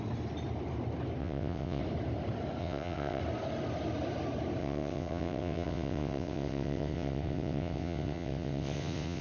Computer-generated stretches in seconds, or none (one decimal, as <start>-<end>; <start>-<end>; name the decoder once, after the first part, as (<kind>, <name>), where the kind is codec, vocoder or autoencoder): 1.2-1.8 (vocoder, WaveNeXt); 2.6-3.2; 4.6-9.2